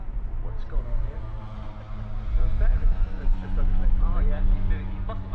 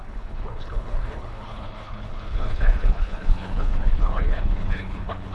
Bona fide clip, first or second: first